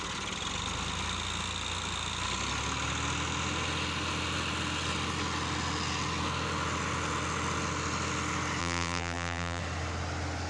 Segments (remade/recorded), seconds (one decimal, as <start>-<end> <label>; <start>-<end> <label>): 0.0-8.6 recorded; 8.6-9.6 remade; 9.6-10.5 recorded